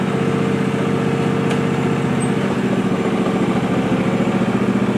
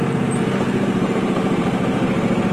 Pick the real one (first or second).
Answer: first